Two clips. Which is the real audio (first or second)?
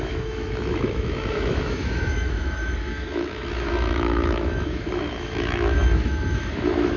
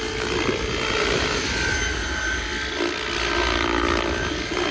second